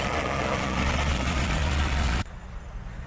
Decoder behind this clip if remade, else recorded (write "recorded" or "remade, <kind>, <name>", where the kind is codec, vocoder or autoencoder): remade, vocoder, Vocos